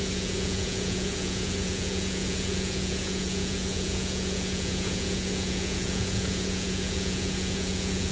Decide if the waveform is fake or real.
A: fake